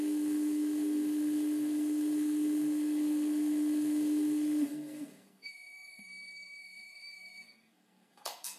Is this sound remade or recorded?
remade